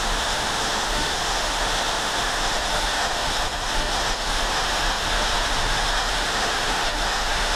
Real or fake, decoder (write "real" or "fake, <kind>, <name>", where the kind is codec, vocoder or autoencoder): fake, autoencoder, DAC-VAE